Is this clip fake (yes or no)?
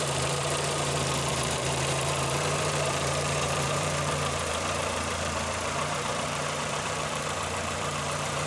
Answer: yes